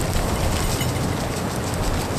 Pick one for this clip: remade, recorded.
recorded